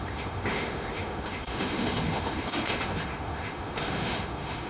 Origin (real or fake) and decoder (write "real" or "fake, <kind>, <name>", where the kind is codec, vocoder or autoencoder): fake, autoencoder, DAC-VAE